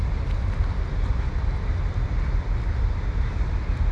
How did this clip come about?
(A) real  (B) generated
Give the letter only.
A